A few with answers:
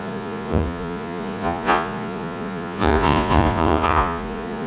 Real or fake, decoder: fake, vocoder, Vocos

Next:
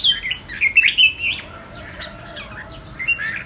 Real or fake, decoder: real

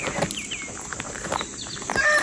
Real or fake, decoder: fake, vocoder, BigVGAN v2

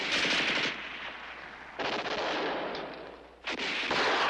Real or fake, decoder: real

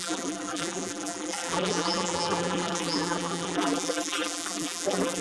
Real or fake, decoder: fake, vocoder, BigVGAN v2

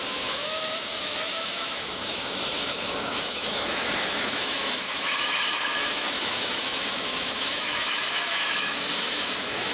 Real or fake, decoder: fake, autoencoder, DAC-VAE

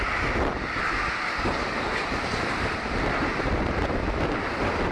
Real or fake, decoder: real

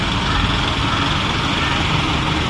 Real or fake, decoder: real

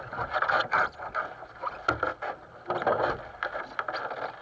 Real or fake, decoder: real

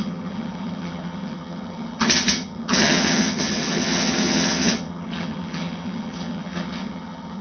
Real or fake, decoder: fake, vocoder, HiFi-GAN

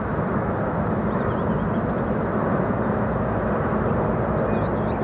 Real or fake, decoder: real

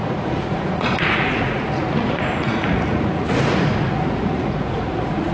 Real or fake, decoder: fake, vocoder, Vocos